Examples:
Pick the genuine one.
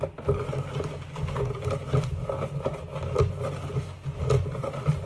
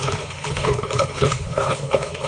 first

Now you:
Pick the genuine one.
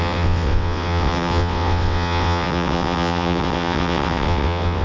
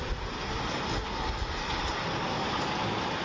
second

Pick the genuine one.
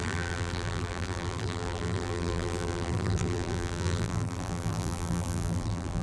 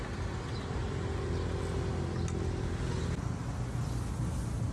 second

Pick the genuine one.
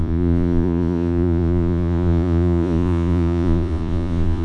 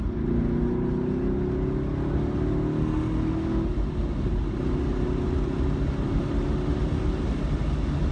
second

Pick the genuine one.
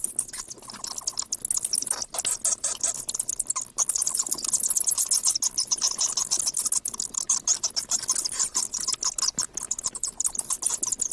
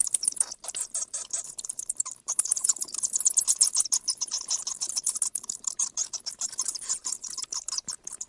first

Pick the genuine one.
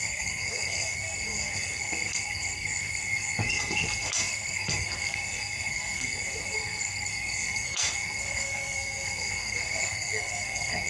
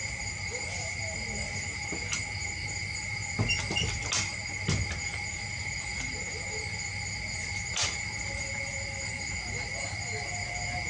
second